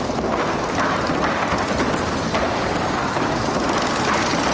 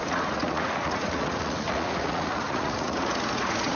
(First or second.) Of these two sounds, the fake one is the second